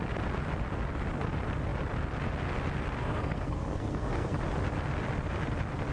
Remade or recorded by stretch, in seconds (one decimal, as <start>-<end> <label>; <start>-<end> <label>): 0.0-3.0 recorded; 3.0-4.4 remade; 4.4-5.9 recorded